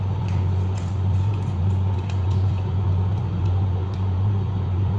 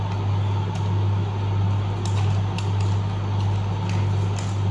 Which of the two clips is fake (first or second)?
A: first